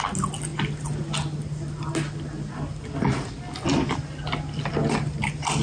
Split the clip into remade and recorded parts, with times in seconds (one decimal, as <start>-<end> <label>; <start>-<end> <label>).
0.0-5.6 recorded